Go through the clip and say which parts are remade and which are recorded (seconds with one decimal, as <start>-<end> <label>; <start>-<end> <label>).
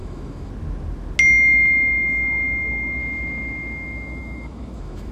0.0-0.5 remade; 0.5-3.0 recorded; 3.0-5.1 remade